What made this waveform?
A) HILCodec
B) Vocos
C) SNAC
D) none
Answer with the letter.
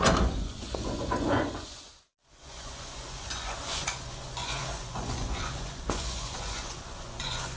B